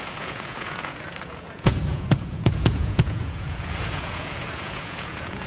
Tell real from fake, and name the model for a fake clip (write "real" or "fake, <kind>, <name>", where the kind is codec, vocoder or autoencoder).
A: fake, vocoder, Vocos